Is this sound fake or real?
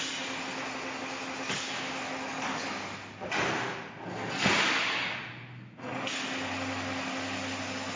real